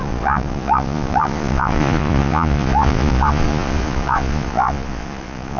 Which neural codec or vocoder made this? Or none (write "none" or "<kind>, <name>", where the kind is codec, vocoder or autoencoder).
vocoder, Vocos